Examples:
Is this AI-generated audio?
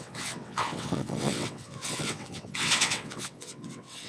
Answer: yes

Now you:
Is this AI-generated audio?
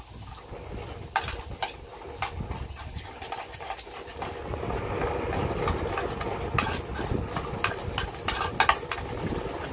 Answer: no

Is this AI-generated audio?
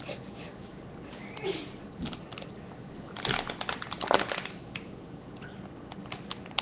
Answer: no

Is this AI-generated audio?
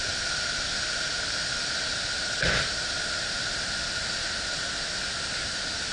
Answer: no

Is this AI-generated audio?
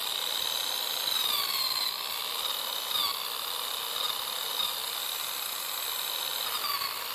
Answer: no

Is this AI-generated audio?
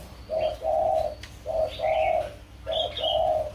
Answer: no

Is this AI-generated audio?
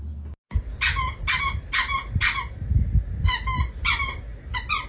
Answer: no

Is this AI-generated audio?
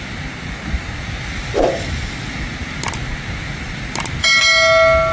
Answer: no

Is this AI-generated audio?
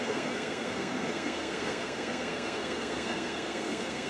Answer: yes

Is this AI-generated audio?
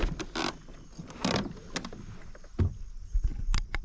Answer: no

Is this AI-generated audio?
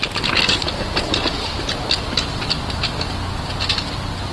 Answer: no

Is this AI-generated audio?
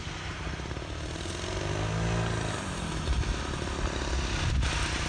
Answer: no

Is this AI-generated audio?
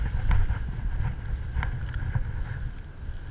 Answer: no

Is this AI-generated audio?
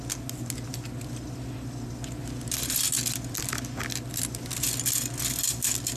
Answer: no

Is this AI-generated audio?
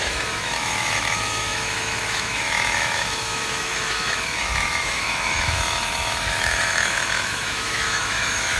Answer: yes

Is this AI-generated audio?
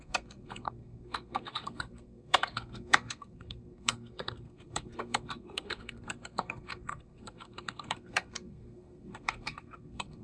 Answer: yes